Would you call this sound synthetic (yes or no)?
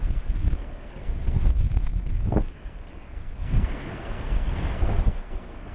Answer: yes